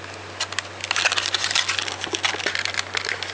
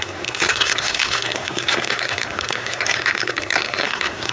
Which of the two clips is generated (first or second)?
second